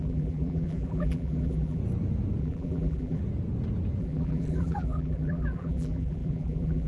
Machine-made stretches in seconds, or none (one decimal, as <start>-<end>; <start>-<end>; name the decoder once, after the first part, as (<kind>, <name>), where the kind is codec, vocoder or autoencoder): 0.0-1.8 (vocoder, BigVGAN v2); 2.4-3.2; 4.0-6.9